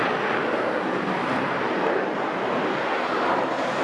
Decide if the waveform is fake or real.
real